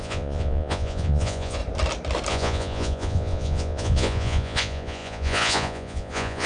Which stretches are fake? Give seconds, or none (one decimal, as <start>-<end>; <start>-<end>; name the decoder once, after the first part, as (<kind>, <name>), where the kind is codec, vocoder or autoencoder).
0.0-1.6 (vocoder, Vocos); 2.3-6.5